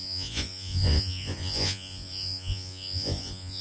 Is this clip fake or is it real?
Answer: fake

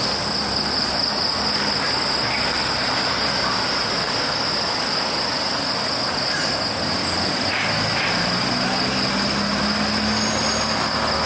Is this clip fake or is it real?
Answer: real